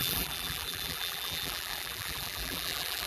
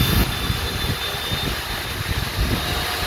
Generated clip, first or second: first